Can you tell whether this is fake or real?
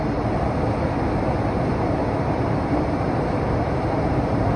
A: real